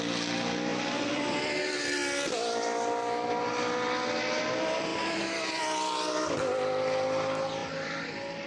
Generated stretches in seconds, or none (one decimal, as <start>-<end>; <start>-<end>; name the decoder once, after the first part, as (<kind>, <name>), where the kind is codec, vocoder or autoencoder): 0.7-1.4 (vocoder, BigVGAN v2); 4.9-5.6; 7.6-8.5